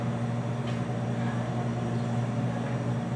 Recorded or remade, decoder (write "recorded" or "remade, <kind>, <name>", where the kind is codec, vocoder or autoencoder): recorded